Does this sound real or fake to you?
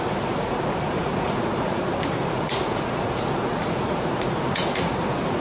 fake